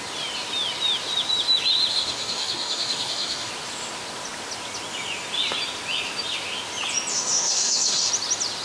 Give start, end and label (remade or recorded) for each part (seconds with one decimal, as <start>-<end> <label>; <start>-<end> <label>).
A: 0.0-1.9 recorded; 1.9-3.5 remade; 3.5-7.1 recorded; 7.1-8.1 remade; 8.1-8.6 recorded

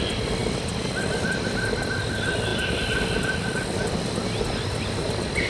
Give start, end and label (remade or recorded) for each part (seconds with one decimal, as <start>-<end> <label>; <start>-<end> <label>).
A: 0.0-5.5 recorded